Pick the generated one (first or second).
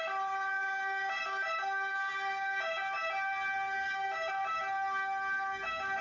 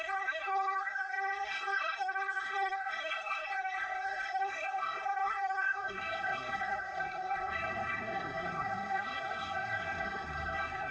second